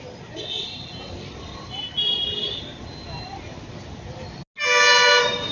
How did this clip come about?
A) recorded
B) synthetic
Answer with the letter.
A